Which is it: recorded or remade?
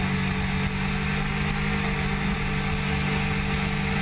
recorded